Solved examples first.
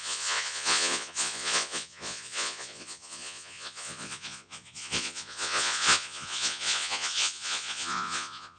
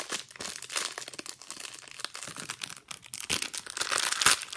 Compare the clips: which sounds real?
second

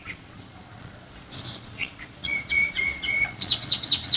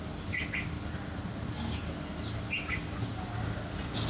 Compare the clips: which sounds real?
second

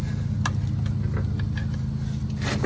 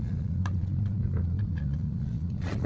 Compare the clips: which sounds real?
first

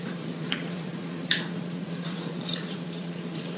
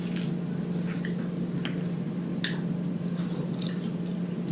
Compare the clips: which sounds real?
second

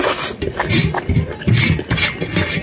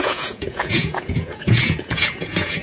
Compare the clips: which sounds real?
first